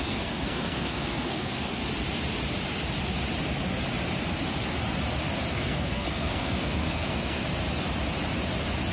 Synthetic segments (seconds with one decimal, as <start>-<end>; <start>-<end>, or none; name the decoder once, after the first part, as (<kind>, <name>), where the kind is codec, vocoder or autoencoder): 0.0-1.8 (codec, SNAC); 5.5-7.4